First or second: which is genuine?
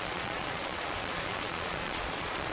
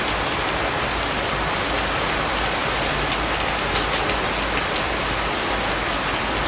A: second